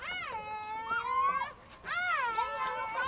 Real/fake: real